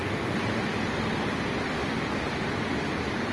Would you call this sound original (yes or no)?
yes